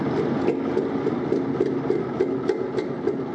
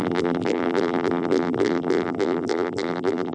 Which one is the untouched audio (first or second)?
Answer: first